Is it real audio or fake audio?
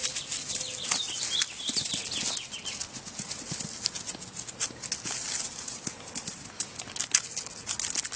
real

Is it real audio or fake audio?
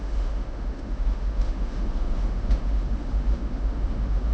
fake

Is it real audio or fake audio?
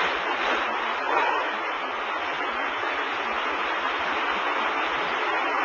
real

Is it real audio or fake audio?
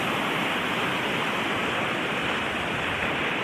real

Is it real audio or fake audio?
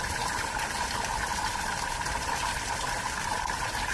real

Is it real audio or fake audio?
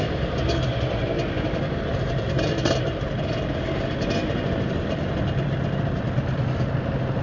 real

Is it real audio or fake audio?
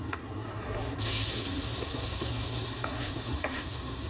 fake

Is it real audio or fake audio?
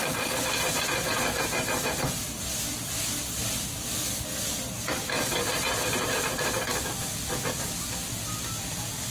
real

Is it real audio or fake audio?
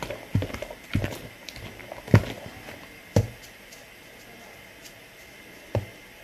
real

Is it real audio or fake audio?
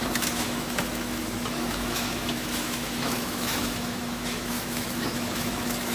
fake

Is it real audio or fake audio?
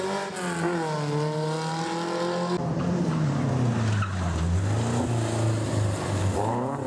real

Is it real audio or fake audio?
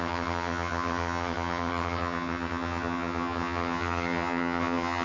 fake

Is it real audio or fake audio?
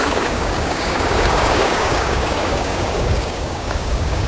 fake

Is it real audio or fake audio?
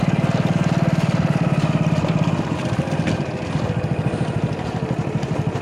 real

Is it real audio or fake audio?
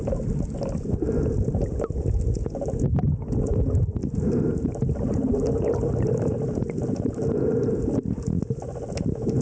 real